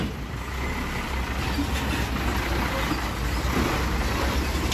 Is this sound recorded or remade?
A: recorded